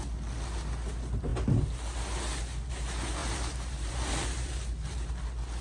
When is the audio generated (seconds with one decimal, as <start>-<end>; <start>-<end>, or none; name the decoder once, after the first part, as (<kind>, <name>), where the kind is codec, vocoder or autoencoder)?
3.2-5.1 (vocoder, BigVGAN v2)